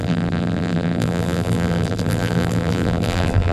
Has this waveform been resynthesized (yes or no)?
yes